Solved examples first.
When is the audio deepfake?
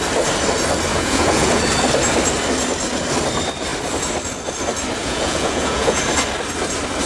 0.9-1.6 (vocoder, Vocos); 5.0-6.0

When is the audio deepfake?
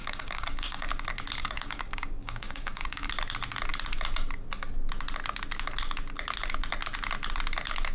0.0-0.9 (codec, DAC); 1.4-3.1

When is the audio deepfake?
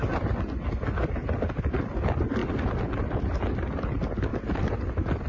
1.2-1.8 (vocoder, BigVGAN v2); 2.4-3.5; 4.3-5.3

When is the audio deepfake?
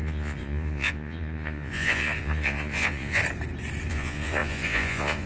0.0-3.2 (vocoder, Vocos); 3.9-5.3